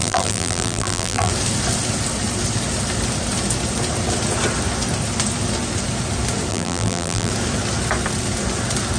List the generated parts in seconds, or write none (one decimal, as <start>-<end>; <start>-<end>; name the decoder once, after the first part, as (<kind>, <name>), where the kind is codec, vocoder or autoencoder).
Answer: 0.0-1.3 (vocoder, BigVGAN v2); 6.5-7.3